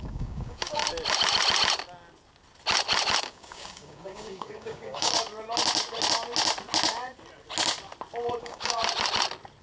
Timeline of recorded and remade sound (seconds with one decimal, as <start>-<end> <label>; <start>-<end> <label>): 0.0-0.8 remade; 0.8-3.2 recorded; 3.2-5.1 remade; 5.1-8.4 recorded; 8.4-8.8 remade; 8.8-9.6 recorded